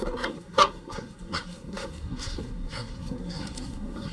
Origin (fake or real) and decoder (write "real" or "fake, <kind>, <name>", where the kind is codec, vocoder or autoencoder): fake, codec, SNAC